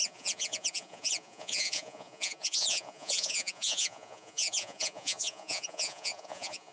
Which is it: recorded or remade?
remade